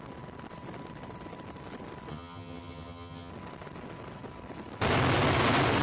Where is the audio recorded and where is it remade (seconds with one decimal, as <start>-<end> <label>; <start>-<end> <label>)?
0.0-2.1 recorded; 2.1-3.3 remade; 3.3-5.8 recorded